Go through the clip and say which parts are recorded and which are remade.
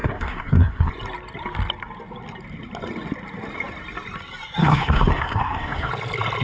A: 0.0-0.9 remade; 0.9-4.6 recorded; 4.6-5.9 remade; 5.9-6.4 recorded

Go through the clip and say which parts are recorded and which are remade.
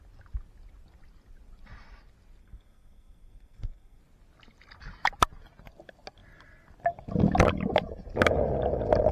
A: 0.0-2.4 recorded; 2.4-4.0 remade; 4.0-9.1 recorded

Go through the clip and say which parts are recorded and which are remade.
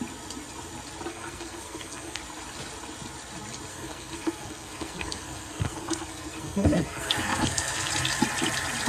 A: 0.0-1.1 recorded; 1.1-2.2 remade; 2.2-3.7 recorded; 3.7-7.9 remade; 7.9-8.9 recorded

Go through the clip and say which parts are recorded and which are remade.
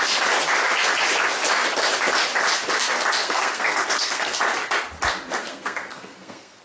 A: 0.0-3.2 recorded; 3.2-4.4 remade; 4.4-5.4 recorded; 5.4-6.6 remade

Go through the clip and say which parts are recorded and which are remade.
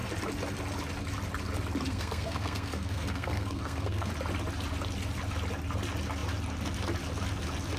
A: 0.0-1.9 recorded; 1.9-4.1 remade; 4.1-7.8 recorded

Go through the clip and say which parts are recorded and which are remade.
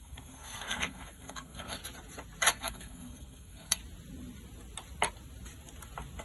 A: 0.0-1.8 remade; 1.8-2.5 recorded; 2.5-3.8 remade; 3.8-6.2 recorded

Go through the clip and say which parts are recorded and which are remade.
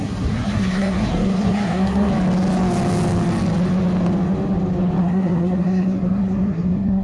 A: 0.0-2.1 remade; 2.1-5.0 recorded; 5.0-7.0 remade